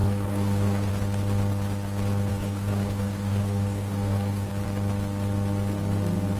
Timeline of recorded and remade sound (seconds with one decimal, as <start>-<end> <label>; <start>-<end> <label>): 0.0-0.9 remade; 0.9-2.3 recorded; 2.3-4.5 remade; 4.5-6.4 recorded